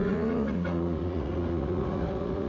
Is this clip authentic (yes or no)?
no